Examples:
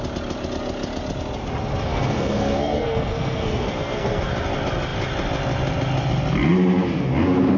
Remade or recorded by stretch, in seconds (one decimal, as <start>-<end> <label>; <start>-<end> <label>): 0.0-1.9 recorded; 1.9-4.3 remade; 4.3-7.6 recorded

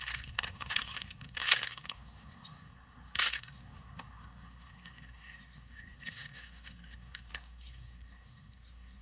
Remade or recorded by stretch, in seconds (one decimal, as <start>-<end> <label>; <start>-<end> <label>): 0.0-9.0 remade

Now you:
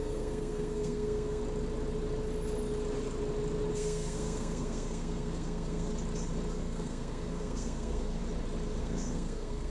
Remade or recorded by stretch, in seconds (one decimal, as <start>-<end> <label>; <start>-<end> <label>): 0.0-1.4 remade; 1.4-3.7 recorded; 3.7-5.9 remade; 5.9-6.5 recorded; 6.5-8.2 remade; 8.2-8.8 recorded; 8.8-9.7 remade

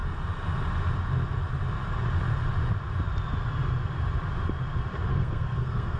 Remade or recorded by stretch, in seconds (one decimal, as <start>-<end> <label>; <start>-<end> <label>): 0.0-5.1 recorded; 5.1-6.0 remade

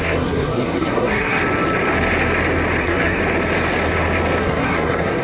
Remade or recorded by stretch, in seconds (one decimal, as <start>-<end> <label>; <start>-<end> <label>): 0.0-1.4 remade; 1.4-2.8 recorded; 2.8-3.2 remade; 3.2-4.4 recorded; 4.4-5.2 remade

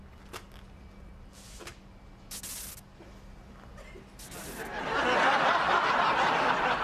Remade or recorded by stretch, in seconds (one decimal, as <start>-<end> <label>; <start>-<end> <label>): 0.0-6.8 recorded

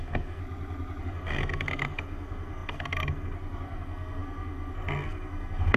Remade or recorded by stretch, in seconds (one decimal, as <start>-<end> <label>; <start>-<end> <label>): 0.0-0.4 remade; 0.4-1.0 recorded; 1.0-5.8 remade

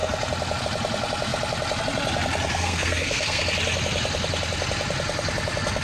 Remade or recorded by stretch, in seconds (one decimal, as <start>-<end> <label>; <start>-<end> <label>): 0.0-2.5 recorded; 2.5-3.4 remade; 3.4-5.8 recorded